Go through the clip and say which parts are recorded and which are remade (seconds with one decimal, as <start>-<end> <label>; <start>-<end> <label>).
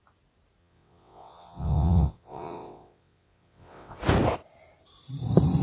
0.0-0.6 recorded; 0.6-4.0 remade; 4.0-5.6 recorded